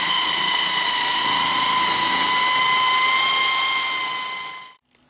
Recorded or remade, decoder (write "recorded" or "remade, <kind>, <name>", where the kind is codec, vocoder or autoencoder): recorded